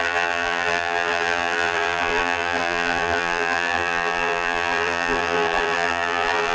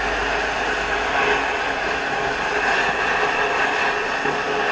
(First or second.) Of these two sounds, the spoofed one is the first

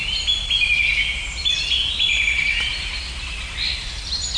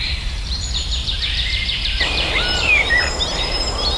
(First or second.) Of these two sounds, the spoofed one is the second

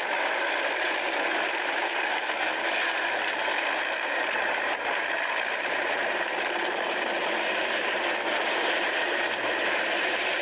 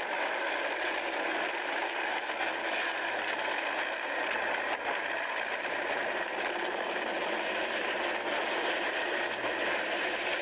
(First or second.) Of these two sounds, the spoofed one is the first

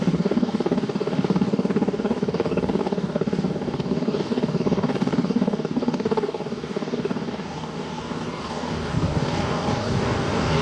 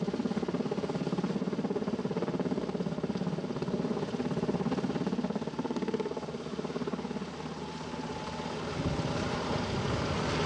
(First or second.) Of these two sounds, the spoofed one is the first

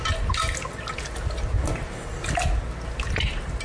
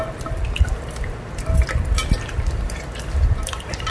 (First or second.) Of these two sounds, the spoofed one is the second